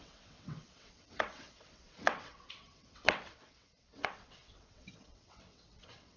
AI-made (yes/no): yes